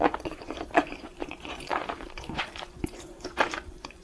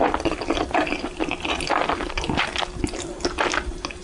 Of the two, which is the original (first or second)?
second